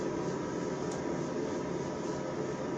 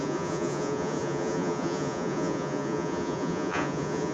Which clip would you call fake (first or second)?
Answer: second